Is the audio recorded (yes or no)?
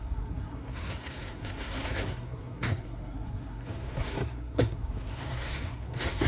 no